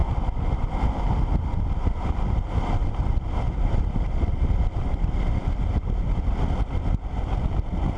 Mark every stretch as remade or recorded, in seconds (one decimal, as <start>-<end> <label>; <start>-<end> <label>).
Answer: 0.0-1.9 recorded; 1.9-5.4 remade; 5.4-6.1 recorded; 6.1-8.0 remade